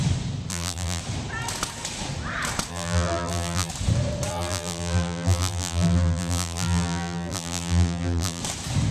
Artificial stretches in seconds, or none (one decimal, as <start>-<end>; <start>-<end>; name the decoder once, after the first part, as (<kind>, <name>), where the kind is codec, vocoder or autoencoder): 0.5-1.0 (vocoder, BigVGAN v2); 2.7-3.7; 4.3-8.4